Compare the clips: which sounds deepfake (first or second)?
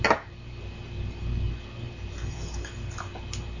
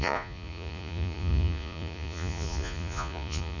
second